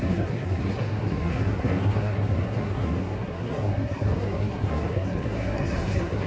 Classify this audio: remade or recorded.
remade